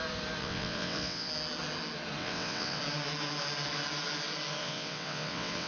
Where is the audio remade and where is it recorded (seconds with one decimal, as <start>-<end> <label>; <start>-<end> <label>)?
0.0-0.4 recorded; 0.4-1.3 remade; 1.3-2.2 recorded; 2.2-2.8 remade; 2.8-4.6 recorded; 4.6-5.7 remade